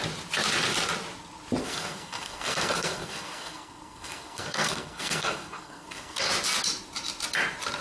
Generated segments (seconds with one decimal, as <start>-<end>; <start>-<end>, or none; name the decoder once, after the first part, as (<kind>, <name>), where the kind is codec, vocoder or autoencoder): 1.6-6.3 (codec, SNAC)